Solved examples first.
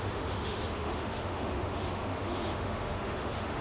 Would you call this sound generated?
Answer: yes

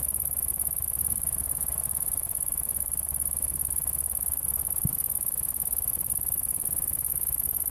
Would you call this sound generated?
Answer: yes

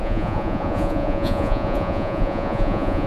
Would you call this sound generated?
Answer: yes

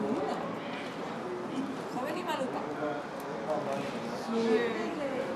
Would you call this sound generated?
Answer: no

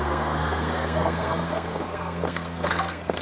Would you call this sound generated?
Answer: yes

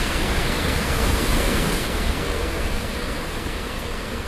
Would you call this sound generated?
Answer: yes